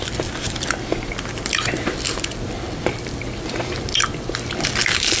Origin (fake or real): fake